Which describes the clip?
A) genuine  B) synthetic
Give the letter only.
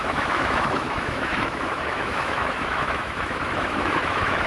B